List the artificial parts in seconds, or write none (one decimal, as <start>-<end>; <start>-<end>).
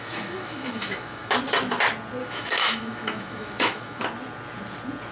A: 0.0-1.3; 2.2-4.0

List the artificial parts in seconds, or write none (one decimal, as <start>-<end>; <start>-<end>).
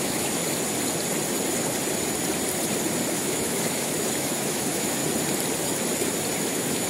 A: 0.0-0.4; 3.1-5.0; 6.4-6.9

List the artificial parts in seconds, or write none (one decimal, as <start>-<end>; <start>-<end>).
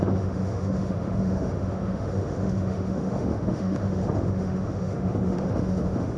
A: 0.0-6.2